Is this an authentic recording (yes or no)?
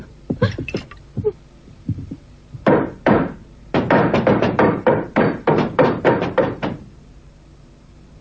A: no